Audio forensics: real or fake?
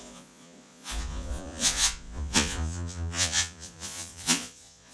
fake